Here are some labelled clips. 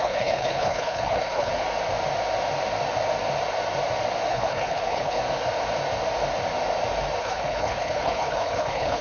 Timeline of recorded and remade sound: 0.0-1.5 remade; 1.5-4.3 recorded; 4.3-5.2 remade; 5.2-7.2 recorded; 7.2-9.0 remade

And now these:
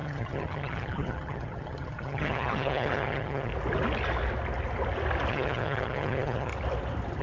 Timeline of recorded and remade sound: 0.0-3.5 remade; 3.5-5.3 recorded; 5.3-6.5 remade; 6.5-7.2 recorded

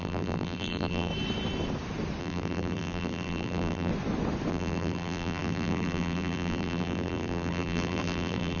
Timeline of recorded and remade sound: 0.0-1.1 remade; 1.1-2.2 recorded; 2.2-3.9 remade; 3.9-4.5 recorded; 4.5-8.6 remade

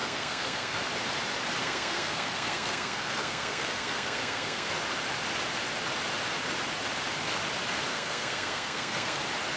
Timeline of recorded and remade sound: 0.0-0.8 remade; 0.8-1.6 recorded; 1.6-4.7 remade; 4.7-7.9 recorded; 7.9-9.2 remade; 9.2-9.6 recorded